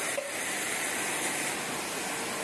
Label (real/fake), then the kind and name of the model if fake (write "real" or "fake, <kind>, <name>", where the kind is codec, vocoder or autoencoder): real